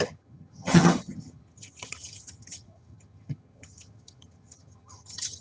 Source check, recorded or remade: remade